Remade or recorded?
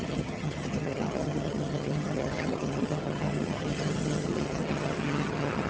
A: remade